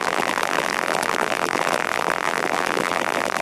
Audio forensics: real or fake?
fake